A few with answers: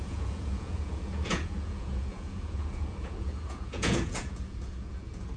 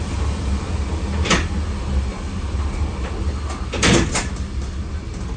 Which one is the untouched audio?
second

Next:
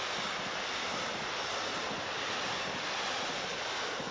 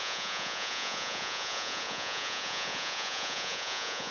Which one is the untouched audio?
first